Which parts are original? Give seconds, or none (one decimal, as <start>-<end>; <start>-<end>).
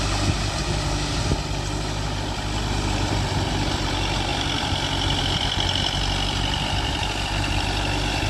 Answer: 0.0-8.3